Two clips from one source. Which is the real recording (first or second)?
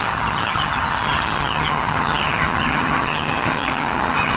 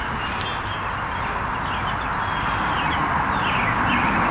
second